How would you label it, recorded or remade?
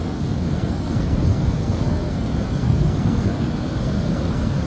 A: remade